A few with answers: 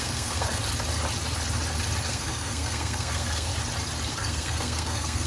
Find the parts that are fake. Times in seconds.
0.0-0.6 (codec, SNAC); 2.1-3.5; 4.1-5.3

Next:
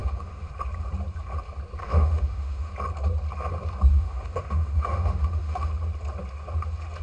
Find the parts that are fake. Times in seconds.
0.0-0.5 (autoencoder, DAC-VAE); 1.8-2.7; 3.9-5.7